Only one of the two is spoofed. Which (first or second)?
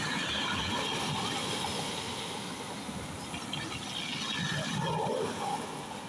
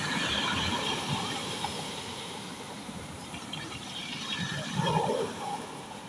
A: second